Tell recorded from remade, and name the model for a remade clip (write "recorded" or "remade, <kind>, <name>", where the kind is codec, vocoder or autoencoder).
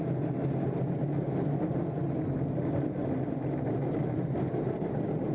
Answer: recorded